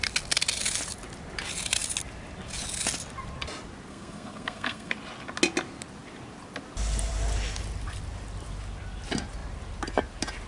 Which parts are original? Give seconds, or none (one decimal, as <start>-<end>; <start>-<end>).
0.0-3.9; 4.9-10.5